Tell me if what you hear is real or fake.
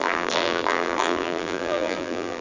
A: fake